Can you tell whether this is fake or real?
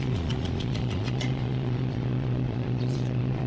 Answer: fake